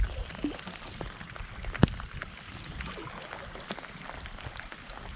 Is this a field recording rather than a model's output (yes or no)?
yes